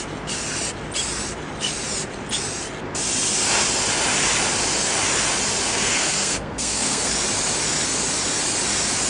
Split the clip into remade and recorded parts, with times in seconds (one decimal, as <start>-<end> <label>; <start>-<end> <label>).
0.0-5.7 recorded; 5.7-7.1 remade; 7.1-9.1 recorded